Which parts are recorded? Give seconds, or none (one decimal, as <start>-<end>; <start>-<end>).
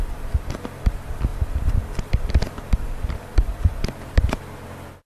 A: 0.0-5.0